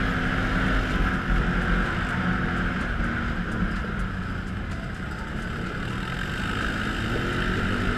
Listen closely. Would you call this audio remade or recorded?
recorded